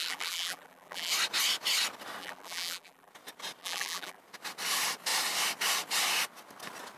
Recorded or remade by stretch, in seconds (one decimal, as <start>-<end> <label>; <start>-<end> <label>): 0.0-1.1 remade; 1.1-2.2 recorded; 2.2-3.1 remade; 3.1-3.6 recorded; 3.6-4.2 remade; 4.2-7.0 recorded